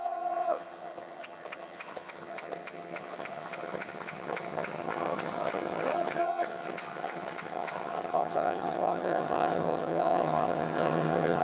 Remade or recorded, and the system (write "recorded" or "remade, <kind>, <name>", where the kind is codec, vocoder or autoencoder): remade, vocoder, HiFi-GAN